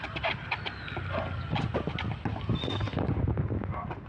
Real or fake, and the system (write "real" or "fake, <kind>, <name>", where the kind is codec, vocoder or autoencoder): real